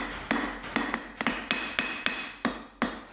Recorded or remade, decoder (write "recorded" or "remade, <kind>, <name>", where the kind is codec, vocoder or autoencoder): recorded